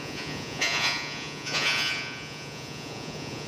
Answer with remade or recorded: remade